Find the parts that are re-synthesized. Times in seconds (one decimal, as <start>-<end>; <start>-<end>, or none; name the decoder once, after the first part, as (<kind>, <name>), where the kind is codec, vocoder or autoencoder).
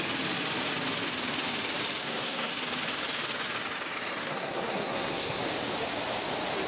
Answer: 2.0-2.5 (codec, SNAC); 4.2-5.4